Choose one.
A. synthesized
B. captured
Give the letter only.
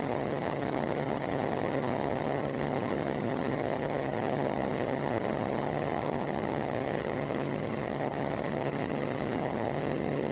A